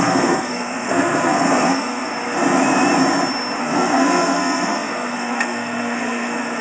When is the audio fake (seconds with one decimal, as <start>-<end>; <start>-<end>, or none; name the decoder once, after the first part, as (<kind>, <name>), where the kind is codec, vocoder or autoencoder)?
0.0-2.1 (codec, SNAC); 3.6-6.6